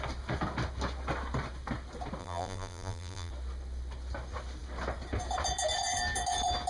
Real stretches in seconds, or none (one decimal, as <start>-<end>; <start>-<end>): 0.0-2.2; 3.3-6.7